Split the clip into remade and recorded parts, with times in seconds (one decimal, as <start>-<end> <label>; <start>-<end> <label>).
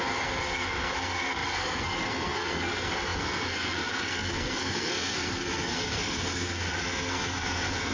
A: 0.0-7.9 remade